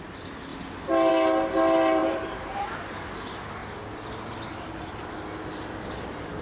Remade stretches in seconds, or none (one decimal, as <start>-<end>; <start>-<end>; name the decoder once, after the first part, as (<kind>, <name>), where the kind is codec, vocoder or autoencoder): 2.0-2.7 (vocoder, BigVGAN v2)